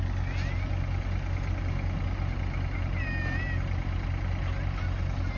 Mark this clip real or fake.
real